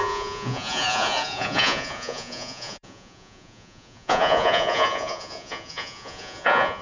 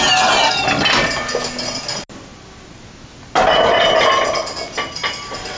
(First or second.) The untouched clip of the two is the second